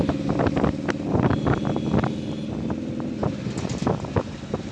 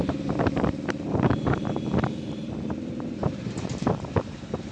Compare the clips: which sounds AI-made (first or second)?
second